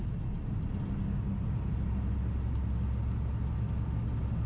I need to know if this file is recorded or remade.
recorded